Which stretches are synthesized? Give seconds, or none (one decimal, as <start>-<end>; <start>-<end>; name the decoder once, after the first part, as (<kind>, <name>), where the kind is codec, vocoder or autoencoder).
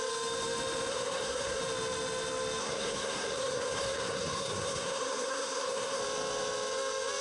0.9-1.6 (codec, SNAC); 2.6-6.0